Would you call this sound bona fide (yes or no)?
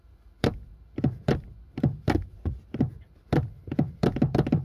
no